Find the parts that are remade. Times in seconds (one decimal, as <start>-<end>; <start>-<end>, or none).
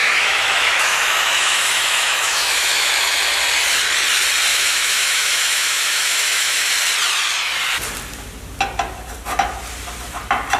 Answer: 0.0-2.9; 4.5-6.7